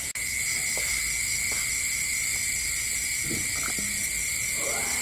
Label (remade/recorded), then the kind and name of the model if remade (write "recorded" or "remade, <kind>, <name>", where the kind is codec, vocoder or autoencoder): recorded